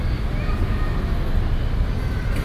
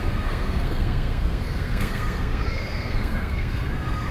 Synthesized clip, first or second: second